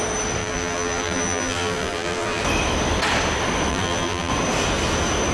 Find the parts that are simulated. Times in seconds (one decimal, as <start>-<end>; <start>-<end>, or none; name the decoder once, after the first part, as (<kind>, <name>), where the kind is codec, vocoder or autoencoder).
0.4-2.4 (vocoder, BigVGAN v2); 3.7-4.3